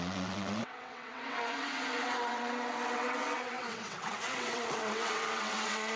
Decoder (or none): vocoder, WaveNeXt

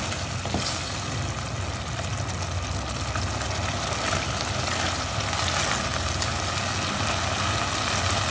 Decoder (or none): none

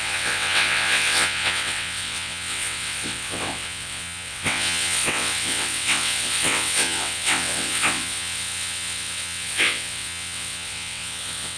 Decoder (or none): vocoder, WaveNeXt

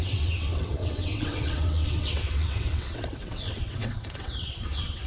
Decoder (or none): vocoder, WaveNeXt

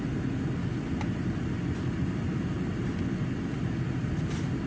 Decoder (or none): none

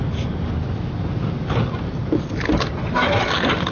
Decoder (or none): none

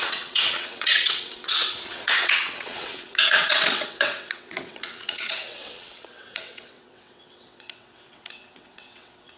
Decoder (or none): vocoder, WaveNeXt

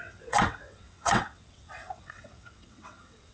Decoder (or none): vocoder, WaveNeXt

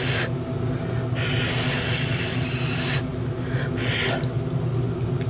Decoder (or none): none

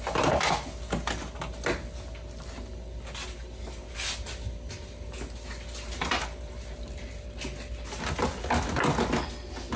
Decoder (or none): none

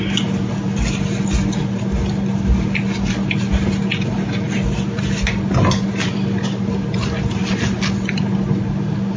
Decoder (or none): none